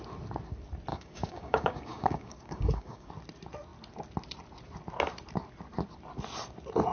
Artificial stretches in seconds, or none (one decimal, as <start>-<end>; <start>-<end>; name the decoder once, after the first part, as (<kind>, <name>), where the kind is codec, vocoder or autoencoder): 0.9-3.1 (codec, DAC)